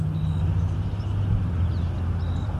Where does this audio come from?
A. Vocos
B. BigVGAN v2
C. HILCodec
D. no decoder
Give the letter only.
D